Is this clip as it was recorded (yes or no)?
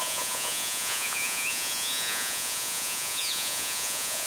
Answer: no